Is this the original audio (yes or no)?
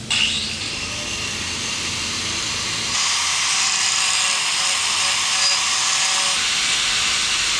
yes